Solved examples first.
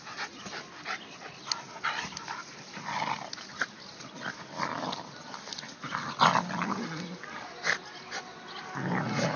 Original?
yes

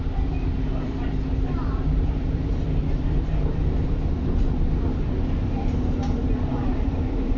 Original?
no